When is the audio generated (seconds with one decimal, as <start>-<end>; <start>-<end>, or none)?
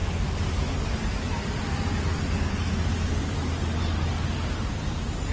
none